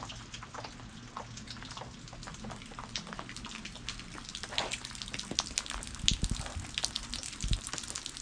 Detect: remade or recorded recorded